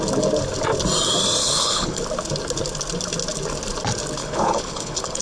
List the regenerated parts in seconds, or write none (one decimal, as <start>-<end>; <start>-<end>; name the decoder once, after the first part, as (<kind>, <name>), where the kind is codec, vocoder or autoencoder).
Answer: 1.4-2.0 (codec, HILCodec); 4.2-5.2